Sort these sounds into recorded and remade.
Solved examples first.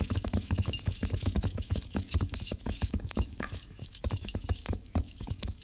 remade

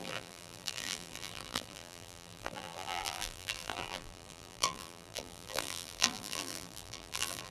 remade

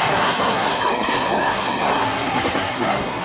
remade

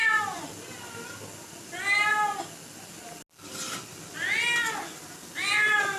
recorded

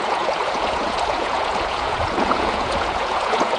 remade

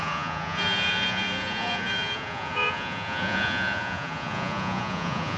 remade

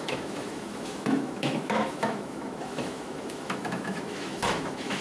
remade